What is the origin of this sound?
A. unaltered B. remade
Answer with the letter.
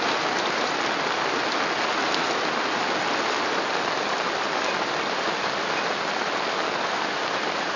B